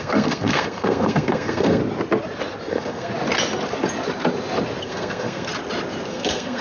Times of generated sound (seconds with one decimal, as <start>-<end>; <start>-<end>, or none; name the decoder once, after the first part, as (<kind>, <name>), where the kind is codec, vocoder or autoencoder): 0.0-1.8 (codec, SNAC); 2.7-3.1; 4.8-5.5; 6.1-6.6